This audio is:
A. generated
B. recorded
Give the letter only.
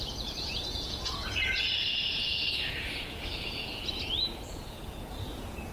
A